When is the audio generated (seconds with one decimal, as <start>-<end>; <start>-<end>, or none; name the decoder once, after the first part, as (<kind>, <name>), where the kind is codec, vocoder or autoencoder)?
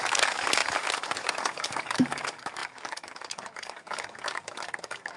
0.0-5.2 (codec, DAC)